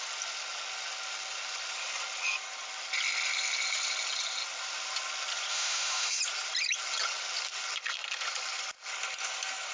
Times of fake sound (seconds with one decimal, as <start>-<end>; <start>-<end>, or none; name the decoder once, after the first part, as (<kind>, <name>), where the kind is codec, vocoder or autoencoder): 5.5-6.2 (autoencoder, DAC-VAE)